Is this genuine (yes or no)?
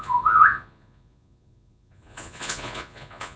no